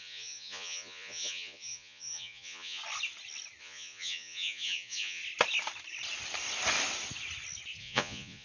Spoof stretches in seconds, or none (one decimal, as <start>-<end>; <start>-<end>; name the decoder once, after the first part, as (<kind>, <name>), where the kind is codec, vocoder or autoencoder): 0.0-2.8 (vocoder, Vocos); 3.6-5.2; 7.8-8.4